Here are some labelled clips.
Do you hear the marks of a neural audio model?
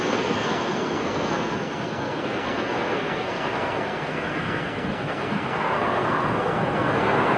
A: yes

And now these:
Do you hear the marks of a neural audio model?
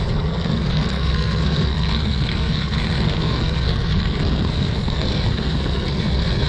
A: yes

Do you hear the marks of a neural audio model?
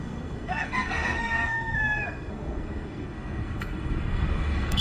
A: yes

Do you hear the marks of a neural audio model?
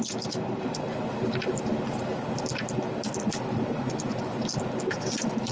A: no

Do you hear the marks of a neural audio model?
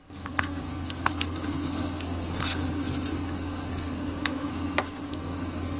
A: yes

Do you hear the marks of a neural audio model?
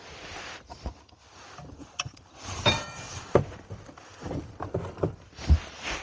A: no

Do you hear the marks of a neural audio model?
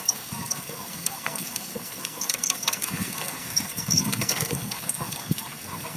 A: yes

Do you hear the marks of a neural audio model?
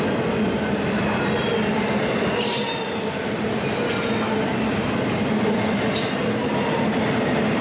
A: no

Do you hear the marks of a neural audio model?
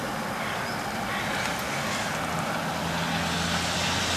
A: no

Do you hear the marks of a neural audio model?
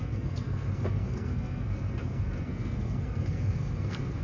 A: yes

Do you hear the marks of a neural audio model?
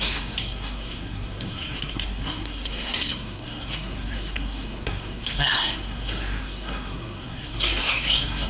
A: yes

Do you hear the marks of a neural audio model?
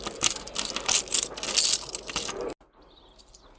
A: no